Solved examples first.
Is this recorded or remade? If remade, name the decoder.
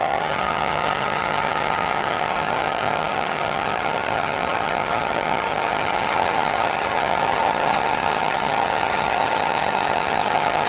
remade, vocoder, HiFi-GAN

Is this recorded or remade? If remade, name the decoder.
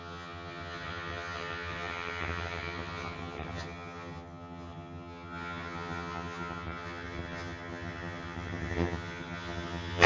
remade, vocoder, HiFi-GAN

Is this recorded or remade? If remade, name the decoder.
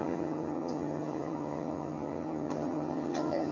remade, vocoder, HiFi-GAN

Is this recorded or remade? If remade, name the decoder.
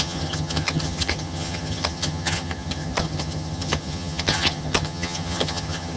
remade, vocoder, HiFi-GAN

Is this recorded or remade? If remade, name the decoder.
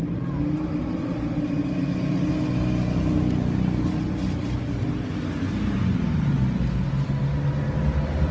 recorded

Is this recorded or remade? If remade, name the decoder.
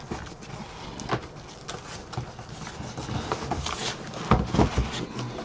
recorded